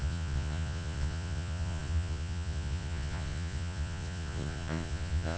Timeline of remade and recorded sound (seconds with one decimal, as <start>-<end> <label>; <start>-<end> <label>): 0.0-5.4 remade